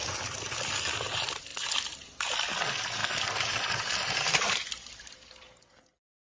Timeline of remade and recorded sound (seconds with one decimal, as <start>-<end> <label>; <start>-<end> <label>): 0.0-6.2 recorded